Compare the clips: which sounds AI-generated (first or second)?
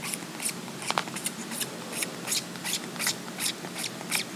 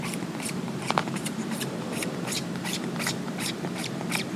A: second